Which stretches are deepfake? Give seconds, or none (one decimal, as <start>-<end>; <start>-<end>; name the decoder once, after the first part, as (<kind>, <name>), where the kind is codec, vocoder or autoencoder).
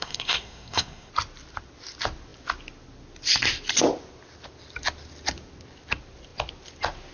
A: 0.0-1.1 (codec, SNAC)